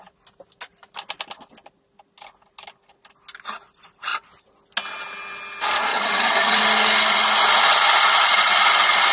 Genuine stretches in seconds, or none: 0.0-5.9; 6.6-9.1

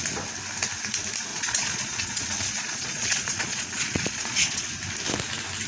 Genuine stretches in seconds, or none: 0.0-1.3; 4.7-5.7

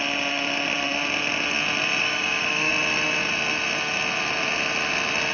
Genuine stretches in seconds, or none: 0.0-2.0; 2.7-5.3

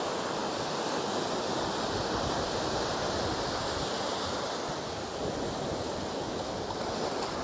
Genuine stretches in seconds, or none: 0.0-7.4

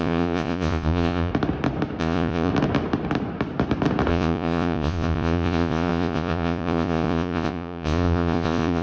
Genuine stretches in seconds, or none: 1.3-2.0; 2.5-4.1

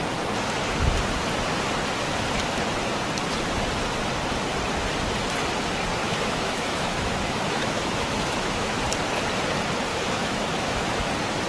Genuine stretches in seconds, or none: 0.0-6.0; 8.8-9.9; 11.1-11.5

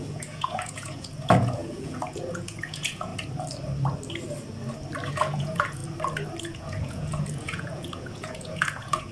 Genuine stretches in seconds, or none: 3.1-5.1; 5.8-6.4

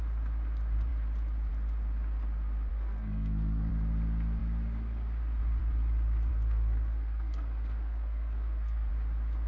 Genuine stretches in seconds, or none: 0.0-2.7; 3.7-6.3; 8.9-9.5